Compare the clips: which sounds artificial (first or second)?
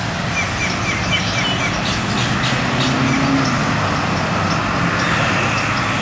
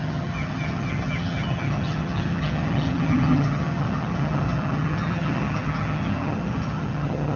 second